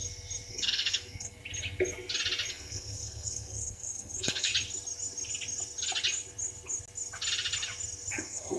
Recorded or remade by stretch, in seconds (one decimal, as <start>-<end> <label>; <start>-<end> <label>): 0.0-0.5 recorded; 0.5-1.4 remade; 1.4-2.5 recorded; 2.5-4.5 remade; 4.5-8.1 recorded; 8.1-8.6 remade